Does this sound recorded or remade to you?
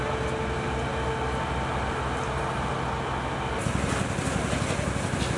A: recorded